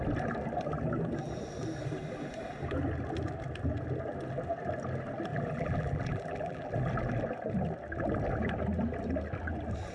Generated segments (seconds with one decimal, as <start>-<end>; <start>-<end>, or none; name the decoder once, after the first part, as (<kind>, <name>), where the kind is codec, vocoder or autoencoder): 5.3-6.7 (vocoder, BigVGAN v2)